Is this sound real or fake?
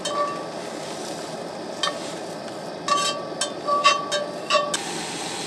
real